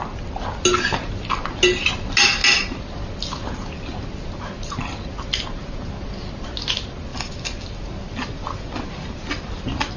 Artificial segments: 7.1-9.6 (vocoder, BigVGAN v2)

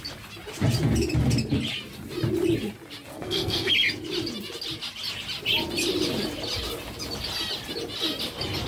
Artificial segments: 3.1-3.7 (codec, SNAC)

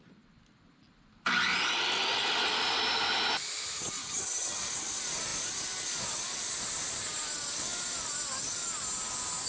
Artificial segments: 4.0-4.6 (vocoder, HiFi-GAN)

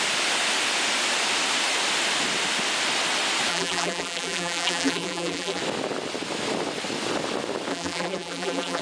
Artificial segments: 3.5-5.6 (vocoder, BigVGAN v2); 7.7-8.8

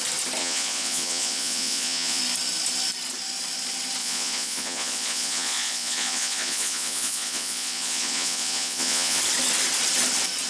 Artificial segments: 0.4-2.2 (vocoder, Vocos); 4.0-9.2